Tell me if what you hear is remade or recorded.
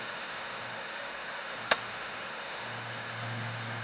remade